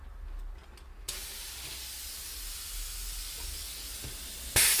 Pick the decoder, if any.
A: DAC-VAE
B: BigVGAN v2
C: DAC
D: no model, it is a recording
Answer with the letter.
D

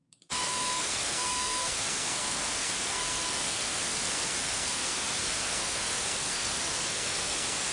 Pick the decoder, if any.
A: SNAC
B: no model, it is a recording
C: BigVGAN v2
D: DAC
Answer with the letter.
A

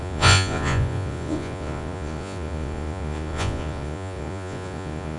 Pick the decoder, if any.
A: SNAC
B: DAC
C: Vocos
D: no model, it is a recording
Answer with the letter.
C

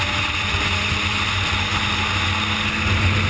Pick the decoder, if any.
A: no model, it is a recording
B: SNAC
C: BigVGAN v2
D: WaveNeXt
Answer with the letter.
A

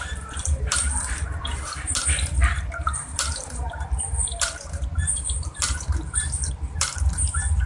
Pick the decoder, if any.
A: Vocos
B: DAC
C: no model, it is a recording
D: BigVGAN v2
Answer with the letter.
D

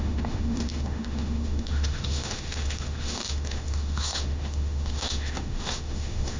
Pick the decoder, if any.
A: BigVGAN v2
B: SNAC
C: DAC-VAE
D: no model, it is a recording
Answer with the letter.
C